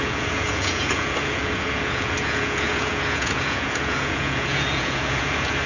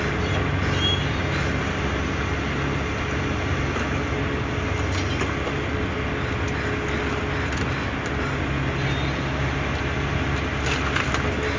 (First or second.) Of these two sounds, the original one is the second